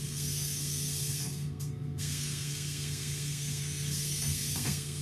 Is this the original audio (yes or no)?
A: no